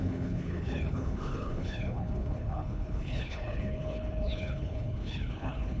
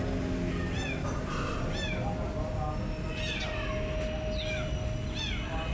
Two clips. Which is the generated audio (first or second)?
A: first